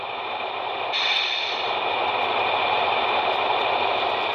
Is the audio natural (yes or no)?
yes